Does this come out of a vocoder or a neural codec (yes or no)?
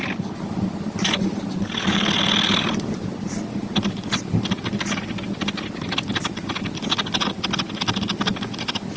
no